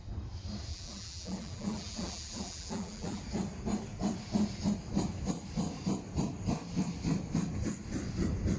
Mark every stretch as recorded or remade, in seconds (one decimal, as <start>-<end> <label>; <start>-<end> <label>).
0.0-0.7 recorded; 0.7-3.2 remade; 3.2-8.6 recorded